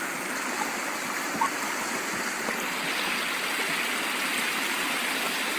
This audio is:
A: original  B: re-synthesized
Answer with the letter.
A